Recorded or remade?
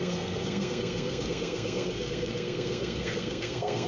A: remade